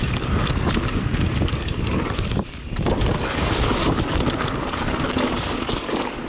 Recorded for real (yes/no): no